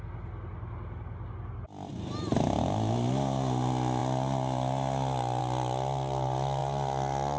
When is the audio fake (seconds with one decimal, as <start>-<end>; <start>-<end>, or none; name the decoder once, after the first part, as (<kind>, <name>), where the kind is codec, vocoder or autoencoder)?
none